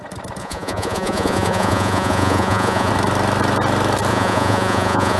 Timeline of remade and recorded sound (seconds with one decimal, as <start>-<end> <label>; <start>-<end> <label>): 0.0-0.4 recorded; 0.4-2.9 remade; 2.9-4.1 recorded; 4.1-5.2 remade